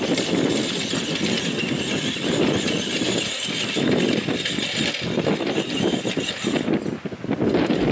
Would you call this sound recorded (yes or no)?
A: yes